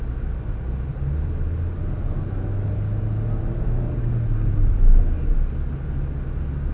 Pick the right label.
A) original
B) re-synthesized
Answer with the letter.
A